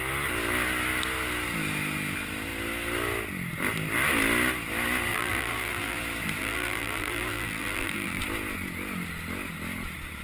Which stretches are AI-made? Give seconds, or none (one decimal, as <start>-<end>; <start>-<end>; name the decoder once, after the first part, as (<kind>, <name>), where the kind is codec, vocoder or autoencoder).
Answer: 5.1-6.0 (vocoder, BigVGAN v2); 6.4-8.2